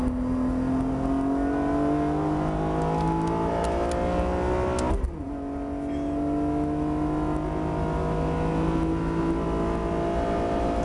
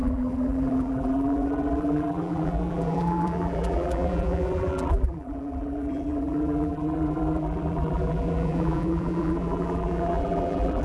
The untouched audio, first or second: first